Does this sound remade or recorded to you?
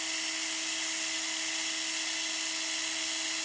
recorded